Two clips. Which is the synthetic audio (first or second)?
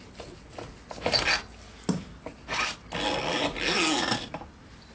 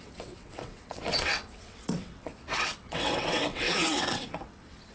second